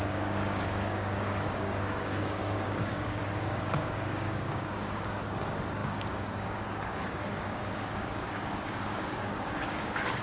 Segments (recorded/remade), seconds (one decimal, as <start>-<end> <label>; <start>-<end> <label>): 0.0-10.2 remade

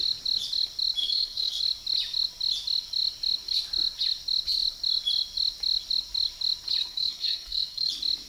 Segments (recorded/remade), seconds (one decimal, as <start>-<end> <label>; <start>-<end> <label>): 0.0-1.0 recorded; 1.0-1.6 remade; 1.6-6.8 recorded; 6.8-7.9 remade; 7.9-8.3 recorded

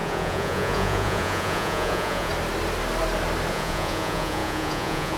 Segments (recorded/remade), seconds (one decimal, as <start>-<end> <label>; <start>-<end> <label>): 0.0-2.3 remade; 2.3-3.5 recorded; 3.5-5.2 remade

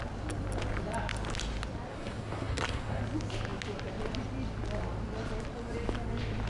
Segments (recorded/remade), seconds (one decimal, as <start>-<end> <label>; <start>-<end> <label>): 0.0-1.9 recorded; 1.9-3.0 remade; 3.0-6.5 recorded

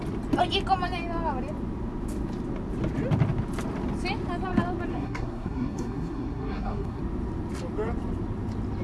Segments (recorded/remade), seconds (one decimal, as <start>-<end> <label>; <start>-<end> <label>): 0.0-4.9 recorded; 4.9-7.0 remade; 7.0-8.8 recorded

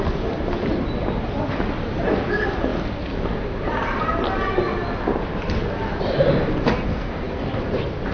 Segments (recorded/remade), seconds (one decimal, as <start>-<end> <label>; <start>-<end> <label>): 0.0-6.9 recorded; 6.9-7.6 remade; 7.6-8.1 recorded